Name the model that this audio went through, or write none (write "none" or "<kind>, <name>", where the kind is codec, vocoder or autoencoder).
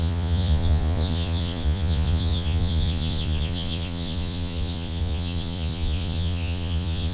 vocoder, Vocos